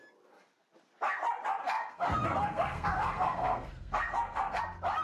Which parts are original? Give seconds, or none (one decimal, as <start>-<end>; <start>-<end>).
0.0-1.6; 4.6-5.0